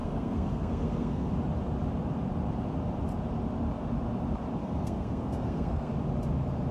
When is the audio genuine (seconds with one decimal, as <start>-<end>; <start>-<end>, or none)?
1.3-4.6; 5.9-6.7